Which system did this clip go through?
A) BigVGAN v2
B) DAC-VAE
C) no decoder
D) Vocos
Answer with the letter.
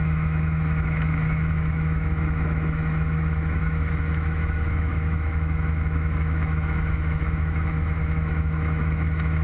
B